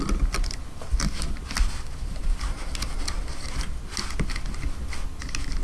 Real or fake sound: real